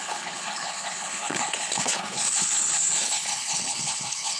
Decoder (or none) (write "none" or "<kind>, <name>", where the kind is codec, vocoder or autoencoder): codec, HILCodec